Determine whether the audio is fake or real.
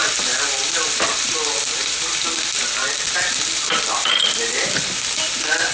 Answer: real